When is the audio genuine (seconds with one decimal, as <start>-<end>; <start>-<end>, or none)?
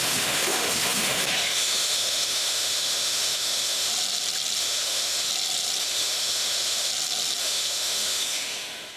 3.9-4.6; 5.3-5.8; 6.9-7.4